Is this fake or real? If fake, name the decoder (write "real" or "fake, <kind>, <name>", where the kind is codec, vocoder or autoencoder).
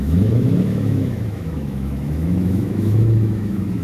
fake, autoencoder, DAC-VAE